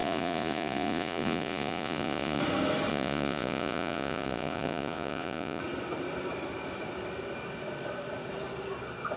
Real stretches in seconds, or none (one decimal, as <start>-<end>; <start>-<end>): 2.4-2.9; 5.6-9.2